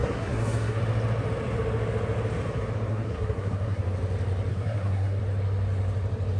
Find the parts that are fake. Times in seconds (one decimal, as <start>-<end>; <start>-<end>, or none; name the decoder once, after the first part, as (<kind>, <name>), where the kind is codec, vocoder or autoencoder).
0.0-0.8 (codec, SNAC); 2.9-3.8; 4.5-5.2